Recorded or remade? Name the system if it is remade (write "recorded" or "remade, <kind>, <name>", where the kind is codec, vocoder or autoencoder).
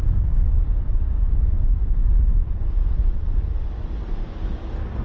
recorded